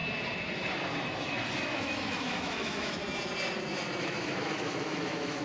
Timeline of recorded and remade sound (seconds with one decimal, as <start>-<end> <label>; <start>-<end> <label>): 0.0-1.7 recorded; 1.7-3.0 remade; 3.0-4.0 recorded; 4.0-5.4 remade